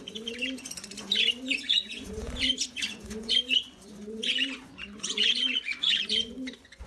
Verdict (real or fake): fake